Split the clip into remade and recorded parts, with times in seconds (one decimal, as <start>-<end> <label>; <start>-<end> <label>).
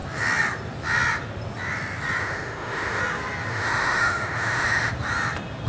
0.0-2.2 recorded; 2.2-3.0 remade; 3.0-3.5 recorded; 3.5-4.9 remade; 4.9-5.7 recorded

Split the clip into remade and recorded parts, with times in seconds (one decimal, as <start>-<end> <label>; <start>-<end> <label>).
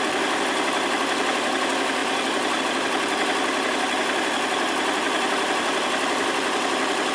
0.0-7.1 recorded